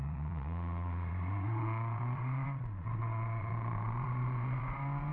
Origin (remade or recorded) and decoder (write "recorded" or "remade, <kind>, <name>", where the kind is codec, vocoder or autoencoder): remade, vocoder, Vocos